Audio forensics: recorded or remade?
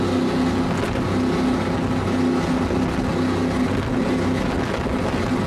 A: recorded